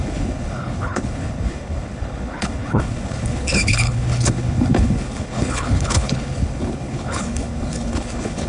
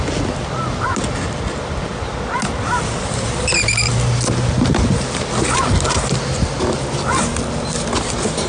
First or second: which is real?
second